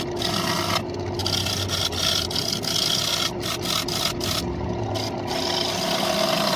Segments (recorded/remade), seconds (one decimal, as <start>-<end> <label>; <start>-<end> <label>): 0.0-6.6 recorded